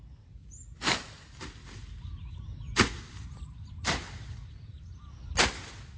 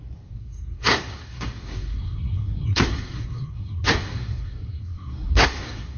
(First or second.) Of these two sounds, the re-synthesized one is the second